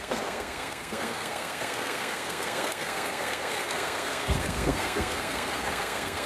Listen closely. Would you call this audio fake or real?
fake